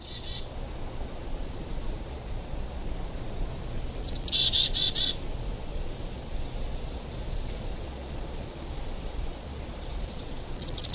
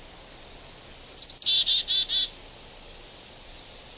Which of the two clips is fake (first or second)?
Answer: first